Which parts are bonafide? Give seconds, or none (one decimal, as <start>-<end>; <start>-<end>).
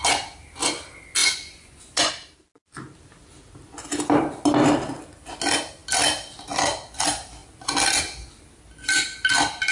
0.0-1.2; 2.1-9.7